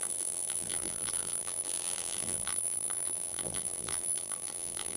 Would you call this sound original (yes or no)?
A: no